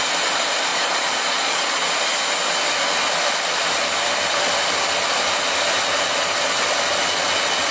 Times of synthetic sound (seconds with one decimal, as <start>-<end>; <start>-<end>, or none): 0.7-2.0